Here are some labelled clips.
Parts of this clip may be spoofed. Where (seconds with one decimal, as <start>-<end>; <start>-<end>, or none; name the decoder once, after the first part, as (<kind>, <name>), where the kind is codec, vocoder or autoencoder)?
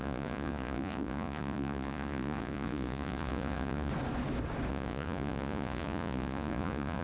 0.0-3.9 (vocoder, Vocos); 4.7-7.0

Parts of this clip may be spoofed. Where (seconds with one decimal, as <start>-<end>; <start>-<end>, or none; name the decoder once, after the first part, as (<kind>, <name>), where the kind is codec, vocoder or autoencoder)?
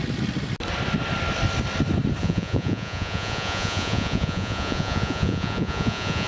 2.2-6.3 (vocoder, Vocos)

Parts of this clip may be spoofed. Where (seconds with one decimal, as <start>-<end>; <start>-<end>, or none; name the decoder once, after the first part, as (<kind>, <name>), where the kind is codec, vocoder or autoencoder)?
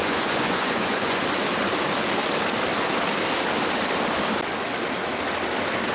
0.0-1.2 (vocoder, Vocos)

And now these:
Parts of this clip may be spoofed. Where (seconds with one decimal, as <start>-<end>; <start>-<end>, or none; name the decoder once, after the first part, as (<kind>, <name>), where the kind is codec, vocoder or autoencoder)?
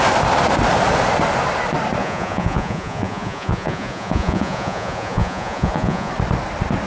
2.0-6.1 (vocoder, Vocos)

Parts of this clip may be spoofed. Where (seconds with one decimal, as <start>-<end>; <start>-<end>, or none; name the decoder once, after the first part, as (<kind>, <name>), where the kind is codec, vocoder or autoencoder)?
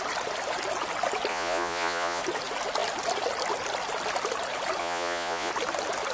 1.3-2.2 (vocoder, Vocos); 4.8-5.5